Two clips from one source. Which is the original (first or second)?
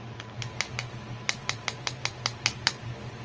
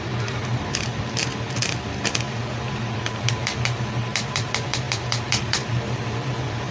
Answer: first